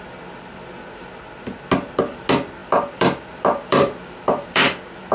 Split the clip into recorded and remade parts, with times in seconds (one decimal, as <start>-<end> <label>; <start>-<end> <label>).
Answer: 0.0-2.6 recorded; 2.6-5.1 remade